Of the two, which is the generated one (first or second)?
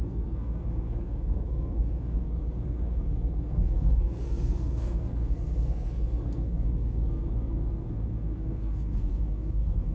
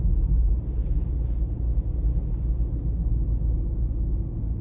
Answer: first